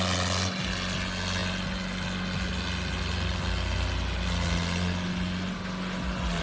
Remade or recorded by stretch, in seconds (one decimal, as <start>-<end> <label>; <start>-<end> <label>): 0.0-6.4 recorded